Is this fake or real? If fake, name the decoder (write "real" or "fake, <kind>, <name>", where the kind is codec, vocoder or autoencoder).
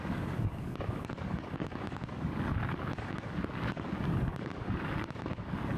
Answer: fake, codec, DAC